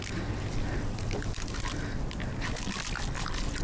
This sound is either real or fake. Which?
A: real